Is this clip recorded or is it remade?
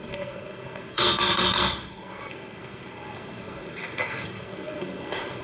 remade